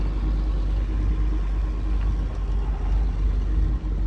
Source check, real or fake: real